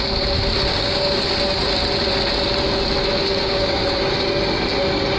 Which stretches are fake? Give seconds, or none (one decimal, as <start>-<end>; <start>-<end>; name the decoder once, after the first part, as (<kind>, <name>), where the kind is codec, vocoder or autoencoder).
0.7-1.2 (codec, DAC); 3.4-4.1